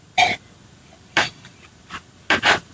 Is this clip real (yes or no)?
yes